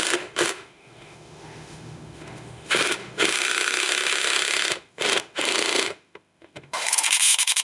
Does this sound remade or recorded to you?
remade